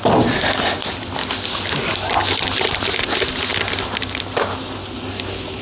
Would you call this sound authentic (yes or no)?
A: yes